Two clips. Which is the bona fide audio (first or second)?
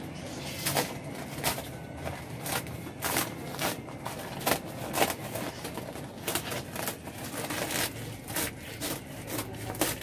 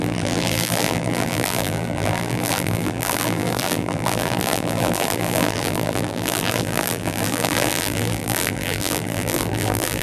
first